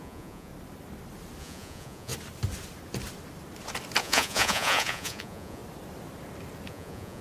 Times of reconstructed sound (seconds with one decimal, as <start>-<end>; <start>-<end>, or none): 0.0-0.5; 1.4-2.1; 4.0-5.6; 6.7-7.2